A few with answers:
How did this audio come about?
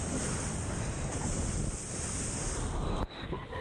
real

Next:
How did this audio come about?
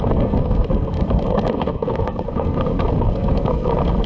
fake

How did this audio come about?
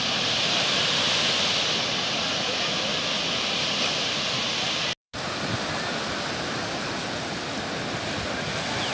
real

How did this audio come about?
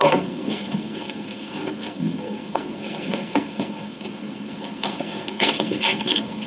fake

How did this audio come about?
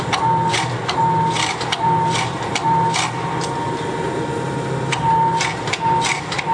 real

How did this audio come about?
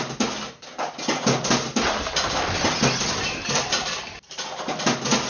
real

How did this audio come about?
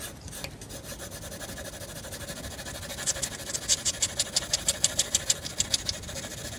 real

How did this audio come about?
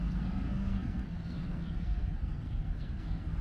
fake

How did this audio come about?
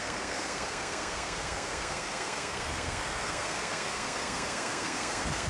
fake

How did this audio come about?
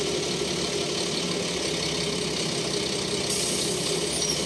real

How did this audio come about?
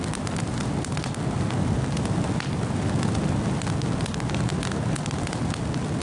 real